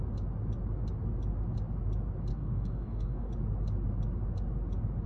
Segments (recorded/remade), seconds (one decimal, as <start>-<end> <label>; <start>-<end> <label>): 0.0-2.3 recorded; 2.3-3.3 remade; 3.3-5.1 recorded